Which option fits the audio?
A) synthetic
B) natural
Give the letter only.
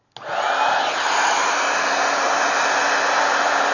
B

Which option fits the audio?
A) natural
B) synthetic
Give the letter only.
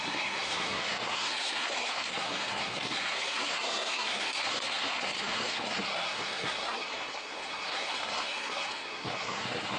B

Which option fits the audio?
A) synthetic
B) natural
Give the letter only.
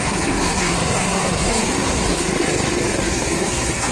A